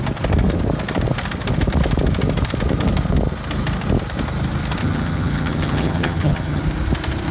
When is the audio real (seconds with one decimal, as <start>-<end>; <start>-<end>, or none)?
0.0-4.8; 6.6-7.3